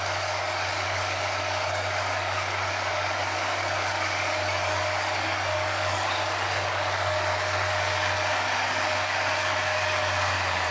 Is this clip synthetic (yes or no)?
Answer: yes